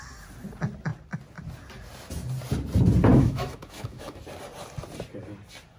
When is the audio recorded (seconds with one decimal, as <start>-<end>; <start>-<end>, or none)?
0.0-3.1; 4.2-5.8